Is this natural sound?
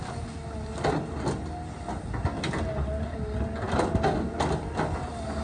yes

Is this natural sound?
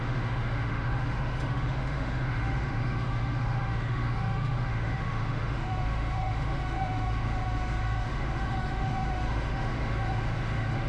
no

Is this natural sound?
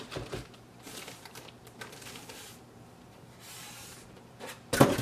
no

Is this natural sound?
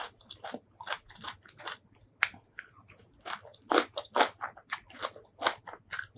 yes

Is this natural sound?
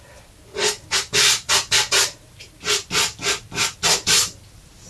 yes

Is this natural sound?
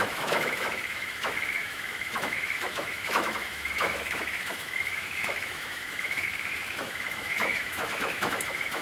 no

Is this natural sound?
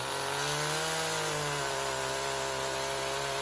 yes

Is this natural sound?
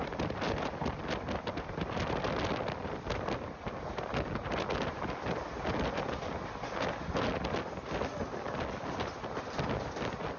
yes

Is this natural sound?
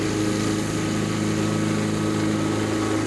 yes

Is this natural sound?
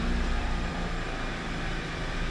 no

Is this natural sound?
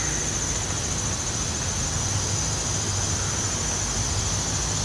yes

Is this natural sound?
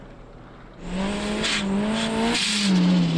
yes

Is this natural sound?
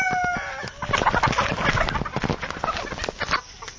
yes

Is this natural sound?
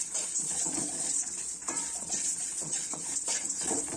no